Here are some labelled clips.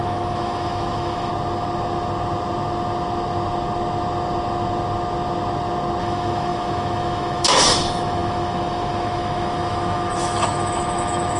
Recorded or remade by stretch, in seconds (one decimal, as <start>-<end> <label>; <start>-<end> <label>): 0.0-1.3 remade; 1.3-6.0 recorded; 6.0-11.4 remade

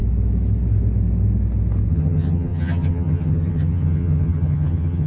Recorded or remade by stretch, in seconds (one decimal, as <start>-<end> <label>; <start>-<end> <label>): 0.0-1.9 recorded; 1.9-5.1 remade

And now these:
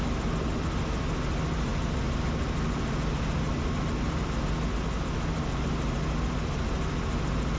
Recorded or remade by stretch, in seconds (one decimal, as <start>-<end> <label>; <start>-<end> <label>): 0.0-7.6 recorded

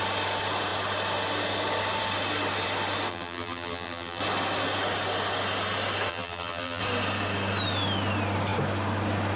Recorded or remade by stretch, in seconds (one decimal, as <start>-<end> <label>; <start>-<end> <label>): 0.0-3.1 recorded; 3.1-4.2 remade; 4.2-6.1 recorded; 6.1-6.8 remade; 6.8-9.4 recorded

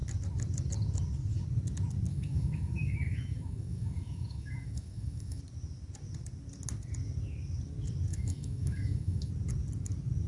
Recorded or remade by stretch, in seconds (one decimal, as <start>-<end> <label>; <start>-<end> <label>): 0.0-2.1 recorded; 2.1-5.4 remade; 5.4-8.1 recorded; 8.1-9.3 remade; 9.3-10.3 recorded

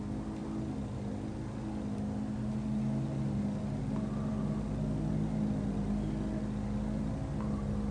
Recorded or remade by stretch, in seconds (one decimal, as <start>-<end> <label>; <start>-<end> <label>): 0.0-7.9 recorded

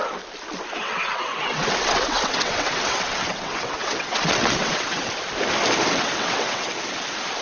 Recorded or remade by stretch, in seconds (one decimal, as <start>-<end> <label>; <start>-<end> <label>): 0.0-0.7 recorded; 0.7-5.1 remade; 5.1-5.9 recorded; 5.9-6.7 remade; 6.7-7.4 recorded

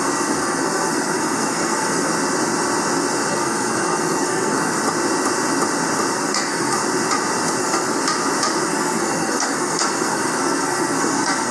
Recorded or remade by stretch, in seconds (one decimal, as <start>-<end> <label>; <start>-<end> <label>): 0.0-2.1 remade; 2.1-3.3 recorded; 3.3-4.8 remade; 4.8-6.1 recorded; 6.1-6.8 remade; 6.8-7.6 recorded; 7.6-8.0 remade; 8.0-8.6 recorded; 8.6-11.5 remade